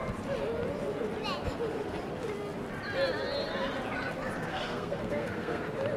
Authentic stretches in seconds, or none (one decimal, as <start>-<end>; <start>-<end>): 0.0-4.5; 5.6-6.0

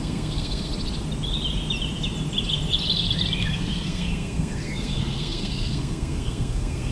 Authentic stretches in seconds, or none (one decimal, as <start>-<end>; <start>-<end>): 0.7-3.4

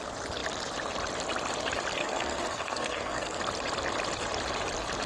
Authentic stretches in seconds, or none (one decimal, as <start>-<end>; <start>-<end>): 0.0-2.0; 3.4-5.1

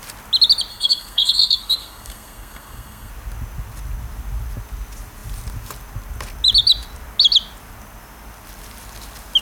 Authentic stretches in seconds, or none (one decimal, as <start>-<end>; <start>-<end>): 0.0-0.7; 3.1-9.4

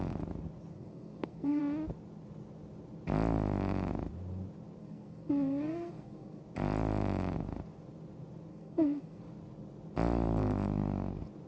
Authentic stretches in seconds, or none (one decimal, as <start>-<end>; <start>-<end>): 0.0-0.7; 1.6-4.8; 6.4-8.5; 9.2-11.5

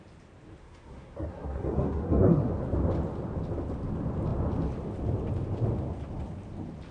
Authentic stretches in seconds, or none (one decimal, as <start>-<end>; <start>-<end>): 0.0-0.6; 2.5-6.9

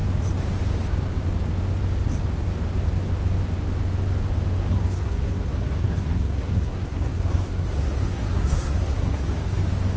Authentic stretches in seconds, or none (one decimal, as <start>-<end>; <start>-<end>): 0.0-4.6; 9.6-10.0